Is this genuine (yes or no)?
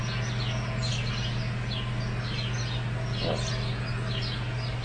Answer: yes